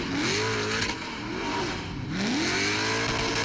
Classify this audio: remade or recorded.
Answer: recorded